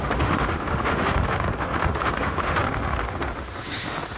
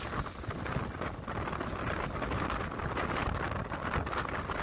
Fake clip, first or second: first